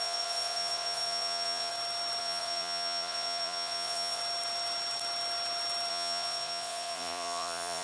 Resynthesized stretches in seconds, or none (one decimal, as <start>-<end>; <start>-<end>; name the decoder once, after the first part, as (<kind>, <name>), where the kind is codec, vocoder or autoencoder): 0.0-1.7 (vocoder, Vocos); 2.2-4.2; 5.9-7.8